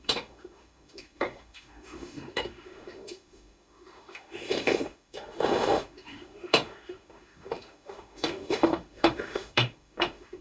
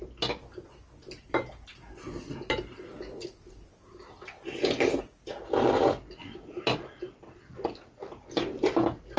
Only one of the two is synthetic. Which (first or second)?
first